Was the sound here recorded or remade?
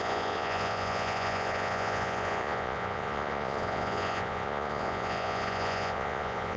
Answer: remade